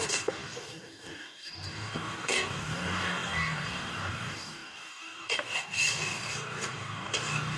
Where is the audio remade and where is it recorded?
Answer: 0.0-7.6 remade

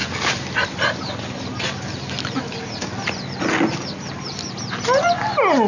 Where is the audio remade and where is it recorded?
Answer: 0.0-5.7 recorded